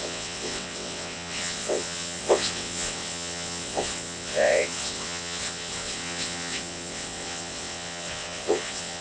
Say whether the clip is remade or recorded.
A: remade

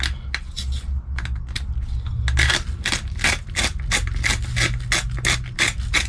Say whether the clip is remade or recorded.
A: recorded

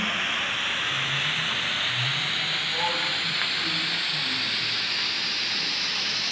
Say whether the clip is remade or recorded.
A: recorded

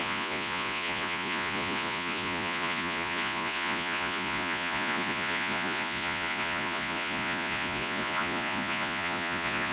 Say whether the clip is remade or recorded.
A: remade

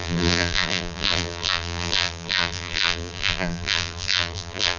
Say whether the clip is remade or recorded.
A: remade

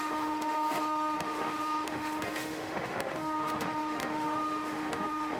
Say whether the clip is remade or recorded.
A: remade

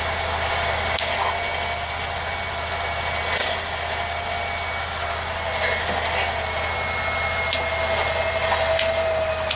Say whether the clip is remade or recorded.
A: recorded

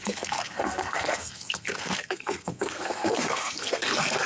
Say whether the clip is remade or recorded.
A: remade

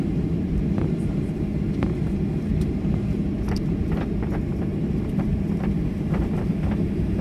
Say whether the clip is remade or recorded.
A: remade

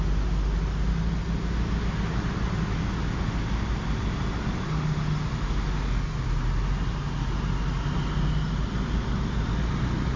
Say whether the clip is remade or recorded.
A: recorded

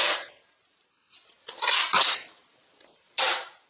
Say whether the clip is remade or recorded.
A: recorded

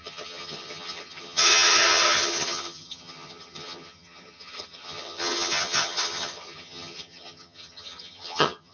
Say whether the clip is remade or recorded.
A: remade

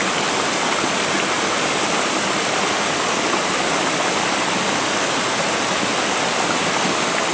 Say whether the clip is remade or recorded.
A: recorded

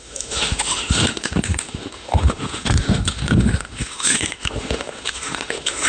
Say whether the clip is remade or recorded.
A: remade